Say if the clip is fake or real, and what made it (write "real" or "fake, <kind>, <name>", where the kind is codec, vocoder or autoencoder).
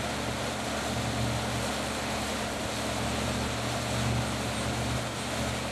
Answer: real